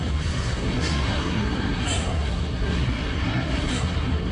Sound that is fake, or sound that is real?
fake